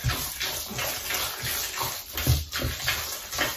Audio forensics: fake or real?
real